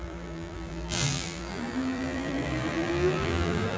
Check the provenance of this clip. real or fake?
fake